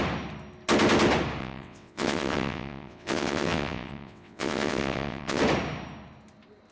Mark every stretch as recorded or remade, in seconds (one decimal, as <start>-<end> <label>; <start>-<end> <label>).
0.0-1.4 recorded; 1.4-5.4 remade; 5.4-6.7 recorded